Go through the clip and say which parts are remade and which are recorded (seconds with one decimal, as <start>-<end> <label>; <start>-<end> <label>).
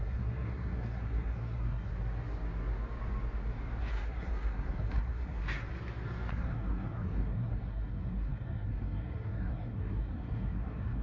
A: 0.0-1.9 remade; 1.9-3.9 recorded; 3.9-5.7 remade; 5.7-6.3 recorded; 6.3-11.0 remade